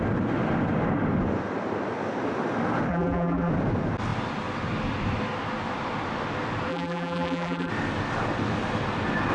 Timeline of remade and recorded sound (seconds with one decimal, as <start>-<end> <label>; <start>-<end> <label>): 0.0-2.9 recorded; 2.9-3.5 remade; 3.5-6.7 recorded; 6.7-7.7 remade; 7.7-9.3 recorded